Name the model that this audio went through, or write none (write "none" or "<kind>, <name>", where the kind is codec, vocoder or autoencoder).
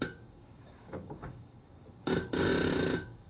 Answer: codec, DAC